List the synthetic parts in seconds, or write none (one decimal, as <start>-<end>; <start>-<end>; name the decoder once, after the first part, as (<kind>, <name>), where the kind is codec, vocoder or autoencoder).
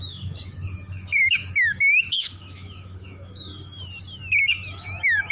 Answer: 0.0-3.5 (autoencoder, DAC-VAE); 4.4-5.3